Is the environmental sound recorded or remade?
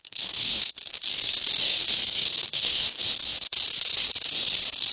remade